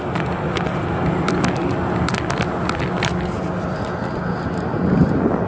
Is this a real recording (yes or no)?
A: yes